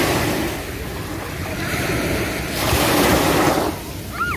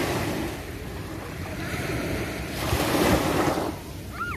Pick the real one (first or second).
first